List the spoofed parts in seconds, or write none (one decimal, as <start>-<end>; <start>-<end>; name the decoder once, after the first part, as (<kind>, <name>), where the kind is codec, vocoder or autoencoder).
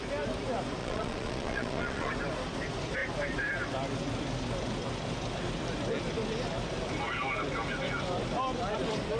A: 0.8-2.1 (vocoder, Vocos)